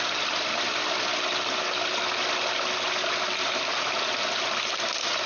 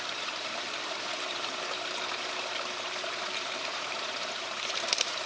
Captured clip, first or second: first